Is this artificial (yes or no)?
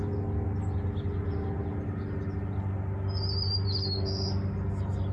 no